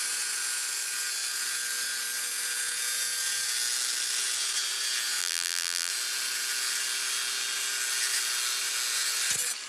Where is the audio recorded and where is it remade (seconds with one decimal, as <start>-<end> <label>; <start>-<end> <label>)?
0.0-5.2 recorded; 5.2-5.9 remade; 5.9-9.7 recorded